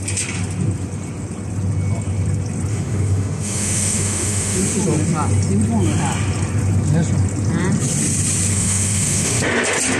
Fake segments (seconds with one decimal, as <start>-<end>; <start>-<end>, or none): 2.7-4.6; 8.5-9.4